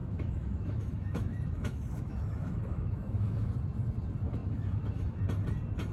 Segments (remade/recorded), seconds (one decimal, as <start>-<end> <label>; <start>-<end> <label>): 0.0-3.5 remade; 3.5-4.4 recorded; 4.4-5.2 remade; 5.2-5.9 recorded